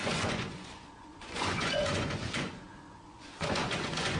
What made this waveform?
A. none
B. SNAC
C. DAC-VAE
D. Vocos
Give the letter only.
D